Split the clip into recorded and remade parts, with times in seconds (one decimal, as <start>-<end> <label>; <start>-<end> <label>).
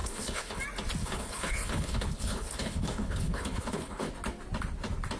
0.0-0.6 remade; 0.6-1.0 recorded; 1.0-4.1 remade; 4.1-5.2 recorded